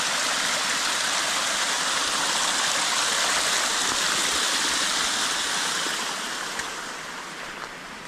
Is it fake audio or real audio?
real